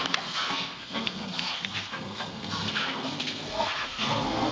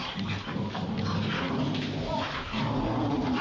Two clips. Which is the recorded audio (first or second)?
second